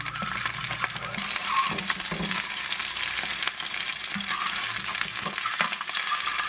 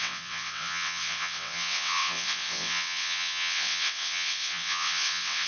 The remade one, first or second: second